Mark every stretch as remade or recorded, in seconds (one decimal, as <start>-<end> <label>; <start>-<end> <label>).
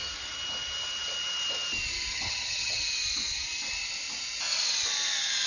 0.0-2.1 recorded; 2.1-2.8 remade; 2.8-5.5 recorded